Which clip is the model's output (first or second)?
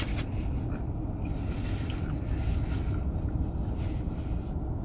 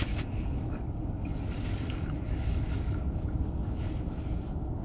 second